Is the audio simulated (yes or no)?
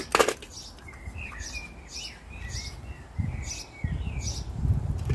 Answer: no